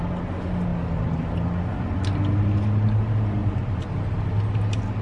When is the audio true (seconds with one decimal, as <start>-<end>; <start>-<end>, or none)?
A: 0.0-5.0